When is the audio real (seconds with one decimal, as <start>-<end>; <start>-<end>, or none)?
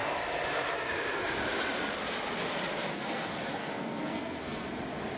0.0-2.9; 4.8-5.2